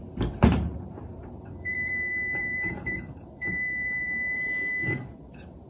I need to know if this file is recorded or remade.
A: remade